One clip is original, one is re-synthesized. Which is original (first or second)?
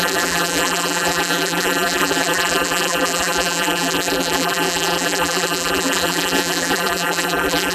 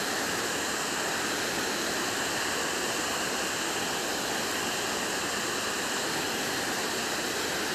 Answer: second